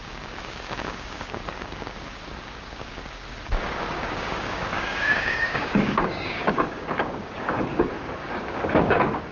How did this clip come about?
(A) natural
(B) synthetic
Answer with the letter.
B